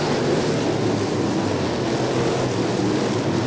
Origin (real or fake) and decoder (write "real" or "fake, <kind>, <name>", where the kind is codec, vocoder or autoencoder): real